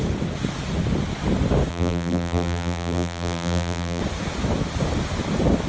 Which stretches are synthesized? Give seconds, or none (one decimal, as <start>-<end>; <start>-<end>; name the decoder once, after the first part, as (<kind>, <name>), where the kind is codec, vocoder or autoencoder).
1.7-4.0 (vocoder, BigVGAN v2)